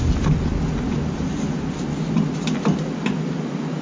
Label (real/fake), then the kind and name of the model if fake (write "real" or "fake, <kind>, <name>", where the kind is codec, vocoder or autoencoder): real